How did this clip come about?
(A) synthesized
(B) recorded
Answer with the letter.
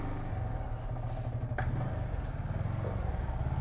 B